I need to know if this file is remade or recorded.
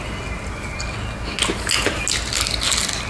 recorded